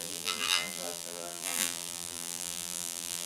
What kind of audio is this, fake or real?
fake